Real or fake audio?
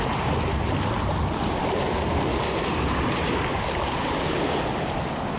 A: real